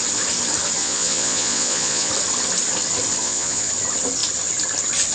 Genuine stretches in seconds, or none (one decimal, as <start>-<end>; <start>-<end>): 0.0-0.8; 2.1-3.2; 3.7-5.1